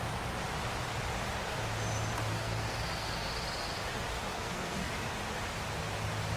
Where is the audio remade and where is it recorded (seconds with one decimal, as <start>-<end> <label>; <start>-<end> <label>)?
0.0-2.3 recorded; 2.3-3.3 remade; 3.3-4.3 recorded; 4.3-4.9 remade; 4.9-6.4 recorded